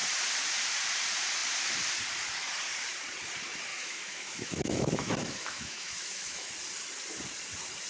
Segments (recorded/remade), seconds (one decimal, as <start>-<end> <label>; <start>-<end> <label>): 0.0-3.7 recorded; 3.7-6.5 remade; 6.5-7.9 recorded

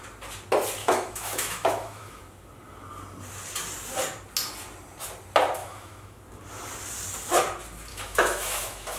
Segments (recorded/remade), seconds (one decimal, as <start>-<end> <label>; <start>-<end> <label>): 0.0-0.8 recorded; 0.8-2.2 remade; 2.2-5.6 recorded; 5.6-6.2 remade; 6.2-7.9 recorded; 7.9-9.0 remade

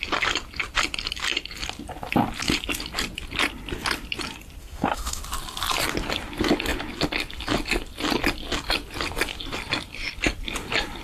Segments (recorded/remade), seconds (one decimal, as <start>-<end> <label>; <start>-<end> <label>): 0.0-4.6 recorded; 4.6-5.2 remade; 5.2-11.0 recorded

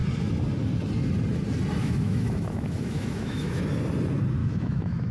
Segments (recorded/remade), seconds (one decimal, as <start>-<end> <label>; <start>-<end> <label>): 0.0-1.8 recorded; 1.8-3.6 remade; 3.6-4.4 recorded; 4.4-5.1 remade

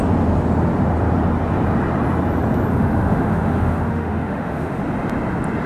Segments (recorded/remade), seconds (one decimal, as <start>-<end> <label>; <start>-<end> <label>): 0.0-2.7 recorded; 2.7-4.8 remade; 4.8-5.7 recorded

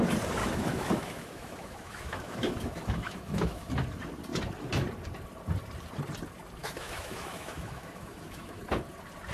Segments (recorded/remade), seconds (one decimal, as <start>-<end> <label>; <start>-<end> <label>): 0.0-0.4 recorded; 0.4-3.7 remade; 3.7-6.6 recorded; 6.6-8.6 remade; 8.6-9.3 recorded